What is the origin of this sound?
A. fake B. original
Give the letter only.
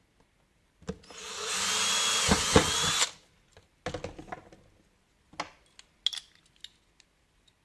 B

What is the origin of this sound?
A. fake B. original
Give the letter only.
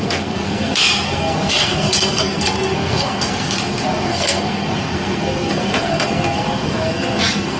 A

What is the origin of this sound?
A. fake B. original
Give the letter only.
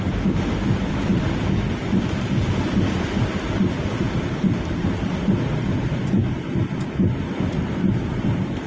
B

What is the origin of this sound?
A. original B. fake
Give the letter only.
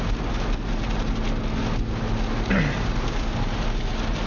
A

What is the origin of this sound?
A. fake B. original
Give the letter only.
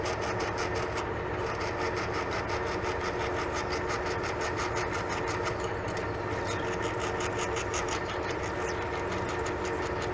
B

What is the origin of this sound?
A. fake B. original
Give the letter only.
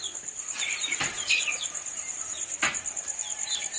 A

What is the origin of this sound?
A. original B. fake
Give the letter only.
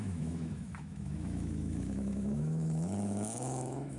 B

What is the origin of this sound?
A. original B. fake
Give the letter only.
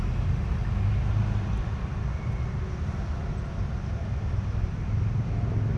A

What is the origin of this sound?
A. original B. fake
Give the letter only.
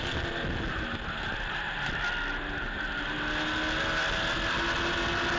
A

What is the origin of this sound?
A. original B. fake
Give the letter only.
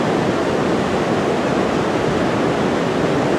A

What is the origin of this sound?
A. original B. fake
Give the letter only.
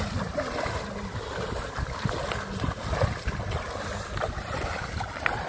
A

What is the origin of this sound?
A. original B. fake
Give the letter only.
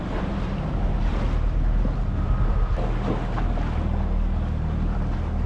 A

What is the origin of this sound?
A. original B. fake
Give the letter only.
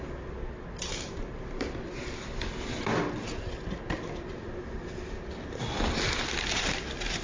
A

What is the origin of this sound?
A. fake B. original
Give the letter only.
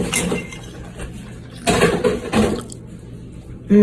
B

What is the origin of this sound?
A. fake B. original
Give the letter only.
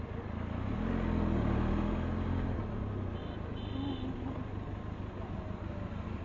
B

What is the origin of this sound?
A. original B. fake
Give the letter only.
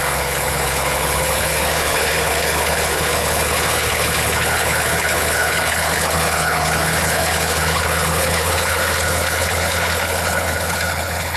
B